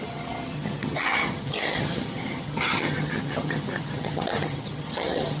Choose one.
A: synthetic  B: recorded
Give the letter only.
A